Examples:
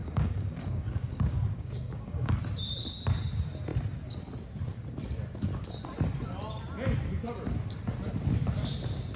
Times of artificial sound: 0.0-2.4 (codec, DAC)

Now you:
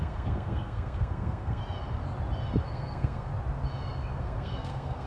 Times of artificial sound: 0.0-1.6 (codec, SNAC); 2.6-3.3; 4.2-5.1

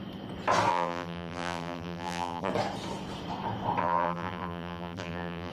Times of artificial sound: 0.7-2.5 (vocoder, BigVGAN v2); 3.8-5.5